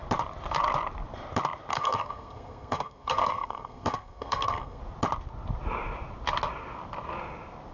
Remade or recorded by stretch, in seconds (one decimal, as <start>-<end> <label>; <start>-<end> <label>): 0.0-1.7 recorded; 1.7-4.8 remade; 4.8-7.7 recorded